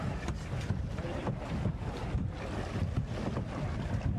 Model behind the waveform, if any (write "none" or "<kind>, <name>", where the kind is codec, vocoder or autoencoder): none